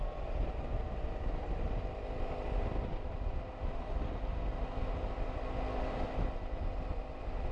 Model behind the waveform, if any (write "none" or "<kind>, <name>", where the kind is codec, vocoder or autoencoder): none